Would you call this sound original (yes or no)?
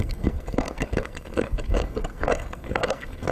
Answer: no